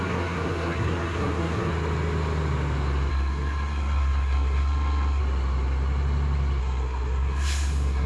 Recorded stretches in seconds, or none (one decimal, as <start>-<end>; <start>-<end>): 1.7-3.1; 5.2-6.6